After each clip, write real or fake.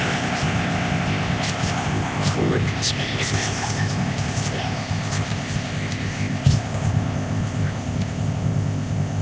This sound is fake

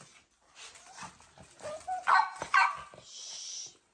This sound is real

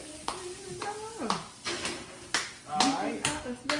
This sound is real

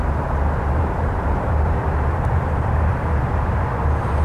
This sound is fake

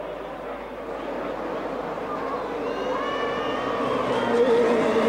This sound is real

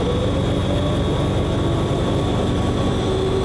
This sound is real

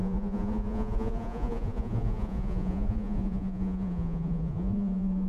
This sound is fake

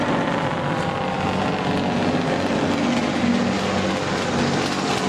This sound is real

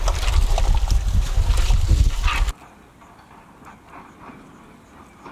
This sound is real